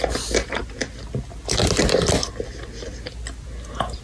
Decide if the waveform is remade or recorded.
recorded